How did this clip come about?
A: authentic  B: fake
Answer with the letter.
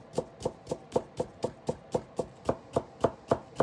A